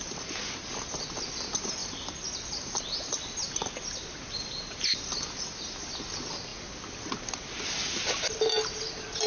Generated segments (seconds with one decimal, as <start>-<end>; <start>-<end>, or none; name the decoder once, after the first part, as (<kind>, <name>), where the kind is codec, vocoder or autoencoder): none